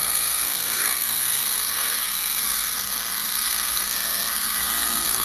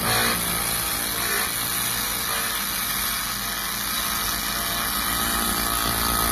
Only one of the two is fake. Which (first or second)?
first